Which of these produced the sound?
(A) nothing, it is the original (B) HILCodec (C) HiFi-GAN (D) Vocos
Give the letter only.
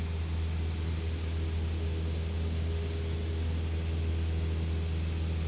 A